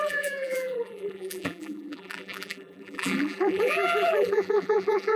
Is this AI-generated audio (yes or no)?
yes